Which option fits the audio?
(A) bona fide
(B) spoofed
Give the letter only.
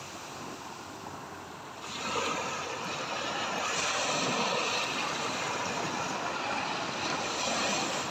A